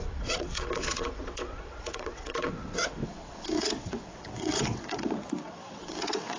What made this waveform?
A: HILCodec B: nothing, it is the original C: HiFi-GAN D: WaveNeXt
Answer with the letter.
D